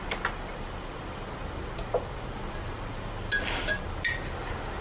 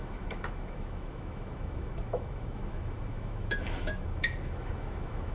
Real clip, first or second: first